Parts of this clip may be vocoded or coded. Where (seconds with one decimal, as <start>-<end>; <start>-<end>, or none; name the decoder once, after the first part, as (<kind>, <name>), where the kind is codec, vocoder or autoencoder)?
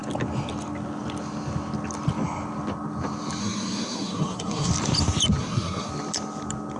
3.4-4.7 (codec, SNAC); 5.4-5.9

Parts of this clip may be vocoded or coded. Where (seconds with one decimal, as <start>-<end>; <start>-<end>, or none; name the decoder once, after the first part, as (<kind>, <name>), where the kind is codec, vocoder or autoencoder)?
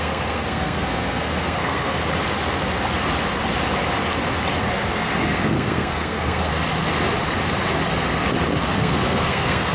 0.0-2.0 (codec, SNAC); 4.6-6.5; 8.6-9.7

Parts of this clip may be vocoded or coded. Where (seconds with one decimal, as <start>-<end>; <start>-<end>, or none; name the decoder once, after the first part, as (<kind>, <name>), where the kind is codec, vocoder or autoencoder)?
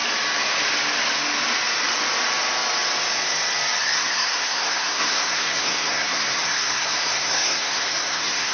3.8-8.5 (codec, SNAC)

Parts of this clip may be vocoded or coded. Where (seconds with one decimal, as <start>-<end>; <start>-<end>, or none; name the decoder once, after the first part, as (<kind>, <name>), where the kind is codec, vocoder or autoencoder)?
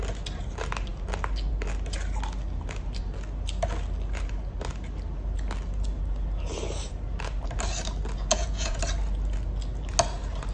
8.3-8.8 (vocoder, Vocos)